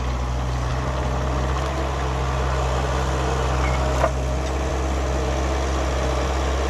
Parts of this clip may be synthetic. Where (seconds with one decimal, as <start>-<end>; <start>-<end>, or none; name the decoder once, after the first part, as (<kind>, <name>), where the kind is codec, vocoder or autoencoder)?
none